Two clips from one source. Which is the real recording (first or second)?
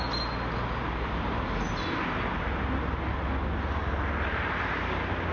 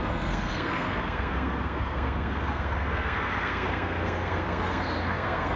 first